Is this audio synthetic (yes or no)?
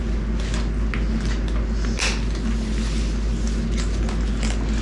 no